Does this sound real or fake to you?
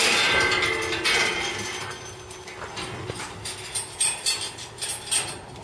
real